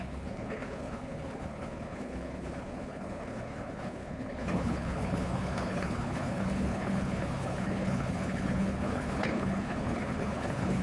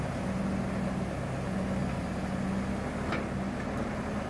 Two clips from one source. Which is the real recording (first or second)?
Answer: second